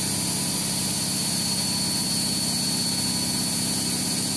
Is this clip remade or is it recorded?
recorded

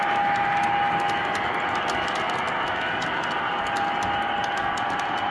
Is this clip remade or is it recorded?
recorded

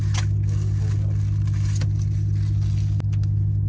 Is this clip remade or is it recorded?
recorded